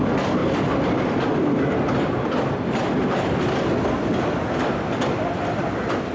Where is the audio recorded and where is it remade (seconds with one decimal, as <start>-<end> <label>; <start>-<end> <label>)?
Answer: 0.0-0.4 recorded; 0.4-3.6 remade; 3.6-6.1 recorded